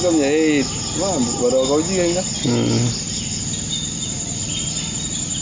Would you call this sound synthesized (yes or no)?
no